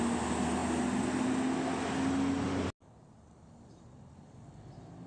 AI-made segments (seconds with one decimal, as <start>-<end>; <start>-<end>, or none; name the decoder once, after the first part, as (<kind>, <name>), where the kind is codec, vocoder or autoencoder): none